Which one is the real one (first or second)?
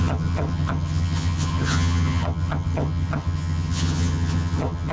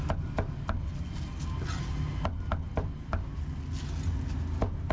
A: second